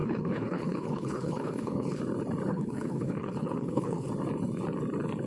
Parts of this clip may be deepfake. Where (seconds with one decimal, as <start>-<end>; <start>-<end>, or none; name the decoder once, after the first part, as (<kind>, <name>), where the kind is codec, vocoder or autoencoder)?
0.0-2.0 (codec, HILCodec); 2.5-4.1